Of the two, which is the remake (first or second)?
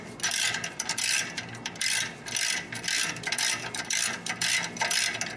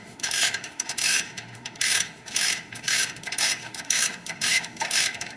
second